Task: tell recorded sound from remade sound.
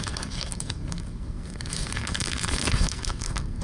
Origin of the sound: remade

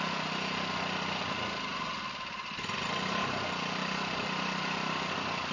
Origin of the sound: recorded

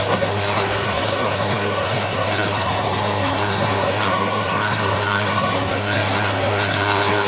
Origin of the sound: remade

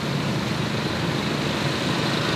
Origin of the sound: recorded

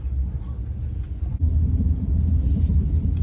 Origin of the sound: recorded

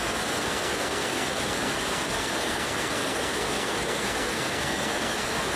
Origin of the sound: remade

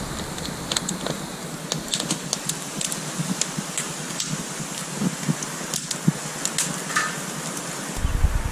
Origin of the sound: recorded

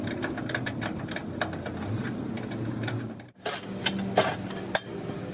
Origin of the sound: recorded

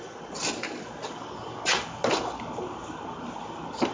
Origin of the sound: recorded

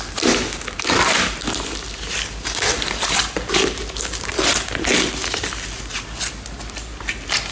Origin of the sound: recorded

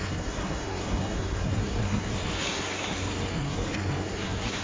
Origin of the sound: remade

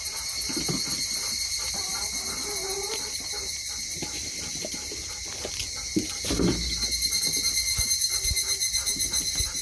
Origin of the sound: recorded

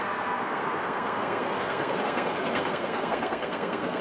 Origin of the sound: remade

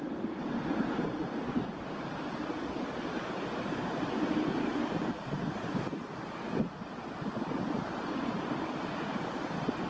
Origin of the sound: recorded